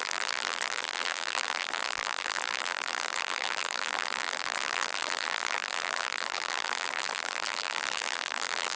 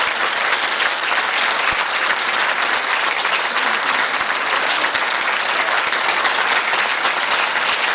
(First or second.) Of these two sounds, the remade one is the first